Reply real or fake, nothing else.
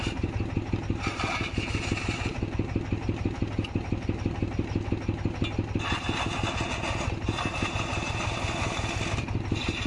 real